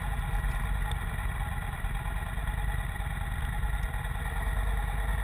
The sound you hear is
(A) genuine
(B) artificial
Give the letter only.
A